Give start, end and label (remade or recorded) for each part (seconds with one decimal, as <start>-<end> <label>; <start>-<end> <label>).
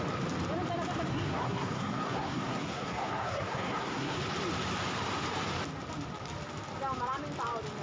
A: 0.0-1.1 recorded; 1.1-4.2 remade; 4.2-7.8 recorded